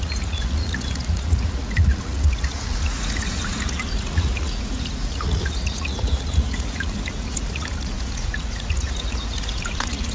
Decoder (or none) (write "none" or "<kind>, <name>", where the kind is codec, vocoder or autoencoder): vocoder, Vocos